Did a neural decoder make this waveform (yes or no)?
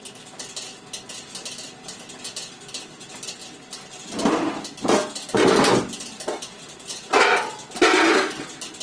no